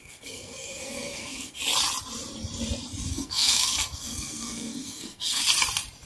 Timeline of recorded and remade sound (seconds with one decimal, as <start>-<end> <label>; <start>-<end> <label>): 0.0-1.6 remade; 1.6-3.1 recorded; 3.1-5.4 remade; 5.4-6.1 recorded